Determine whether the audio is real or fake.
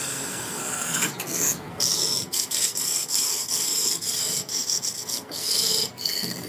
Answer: fake